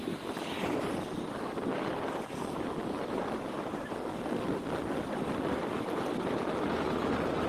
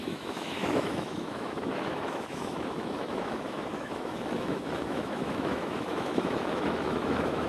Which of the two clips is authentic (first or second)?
first